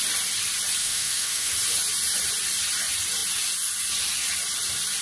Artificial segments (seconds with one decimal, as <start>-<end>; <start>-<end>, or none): 0.8-1.5